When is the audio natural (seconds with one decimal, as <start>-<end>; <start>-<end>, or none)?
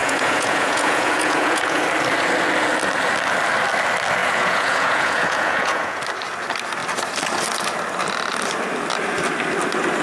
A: 1.8-4.2; 6.0-10.0